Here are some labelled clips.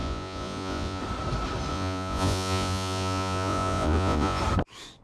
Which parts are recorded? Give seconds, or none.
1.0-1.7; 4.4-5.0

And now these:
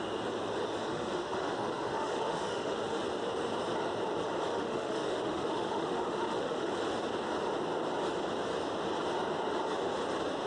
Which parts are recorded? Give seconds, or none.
0.0-0.9; 3.0-4.5; 6.7-10.5

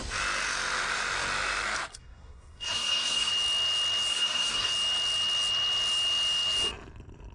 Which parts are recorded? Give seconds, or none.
0.0-1.9; 3.3-4.1; 4.7-7.3

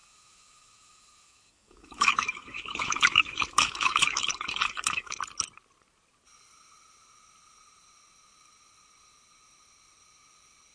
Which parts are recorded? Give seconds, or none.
5.2-10.7

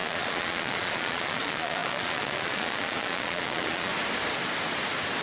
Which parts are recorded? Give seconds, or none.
3.9-5.2